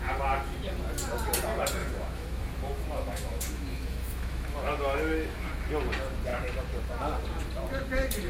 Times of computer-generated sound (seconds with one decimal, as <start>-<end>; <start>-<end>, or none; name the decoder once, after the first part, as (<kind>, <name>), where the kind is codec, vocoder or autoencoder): 1.8-5.5 (autoencoder, DAC-VAE)